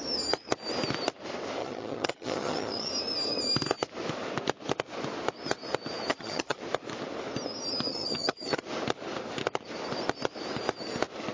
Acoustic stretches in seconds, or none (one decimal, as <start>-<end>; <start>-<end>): 0.0-1.6; 2.9-6.1; 6.6-7.9; 8.6-11.3